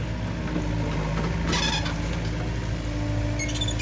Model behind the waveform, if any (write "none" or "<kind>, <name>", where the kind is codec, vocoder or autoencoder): none